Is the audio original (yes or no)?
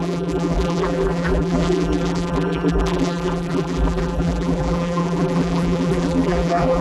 no